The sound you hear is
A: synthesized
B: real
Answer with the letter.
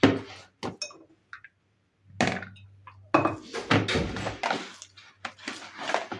B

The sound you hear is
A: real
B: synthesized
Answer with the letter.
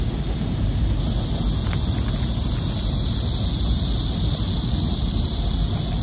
A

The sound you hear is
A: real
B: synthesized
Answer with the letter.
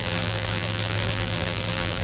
B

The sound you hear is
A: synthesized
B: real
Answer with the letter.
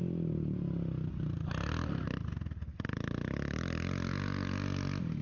B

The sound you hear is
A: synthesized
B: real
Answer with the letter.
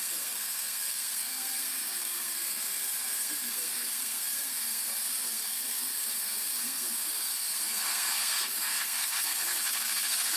A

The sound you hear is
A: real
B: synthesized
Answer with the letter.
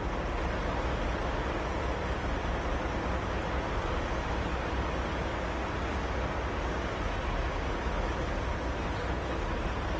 A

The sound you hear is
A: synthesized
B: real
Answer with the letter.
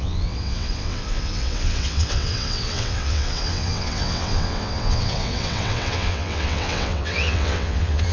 A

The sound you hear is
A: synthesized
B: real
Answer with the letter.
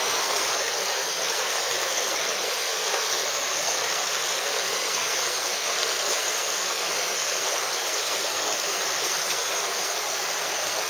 A